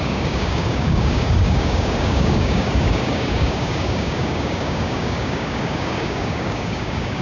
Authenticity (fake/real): fake